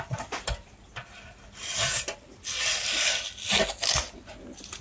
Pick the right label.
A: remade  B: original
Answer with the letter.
B